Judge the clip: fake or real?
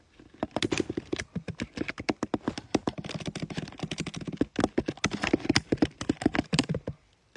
real